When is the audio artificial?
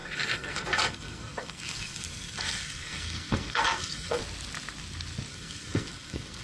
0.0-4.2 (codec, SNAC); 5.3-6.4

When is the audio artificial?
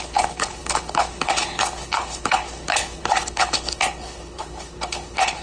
0.0-5.4 (codec, HILCodec)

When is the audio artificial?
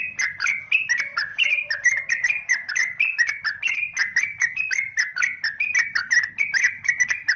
none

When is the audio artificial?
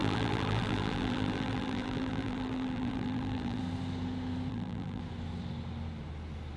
0.0-3.6 (vocoder, BigVGAN v2); 4.5-5.0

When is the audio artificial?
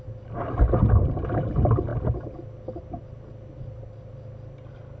none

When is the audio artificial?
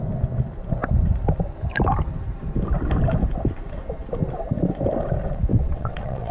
5.5-6.3 (vocoder, WaveNeXt)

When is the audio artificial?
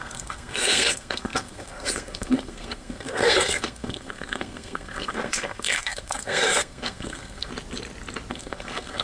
0.0-7.5 (codec, SNAC); 8.3-9.0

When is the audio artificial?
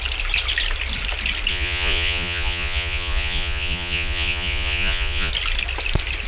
1.5-5.3 (vocoder, Vocos)